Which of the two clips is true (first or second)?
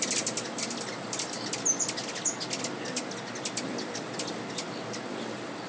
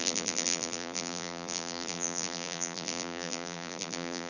first